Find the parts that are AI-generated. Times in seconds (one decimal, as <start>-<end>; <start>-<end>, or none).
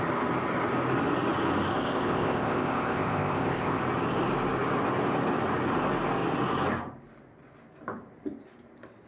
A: 1.7-3.8